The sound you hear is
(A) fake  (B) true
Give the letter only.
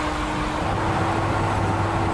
B